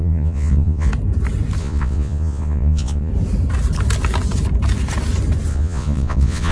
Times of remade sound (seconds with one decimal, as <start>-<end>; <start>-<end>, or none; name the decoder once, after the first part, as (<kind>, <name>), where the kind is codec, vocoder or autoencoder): 0.0-0.9 (vocoder, Vocos); 1.6-3.1; 5.5-6.5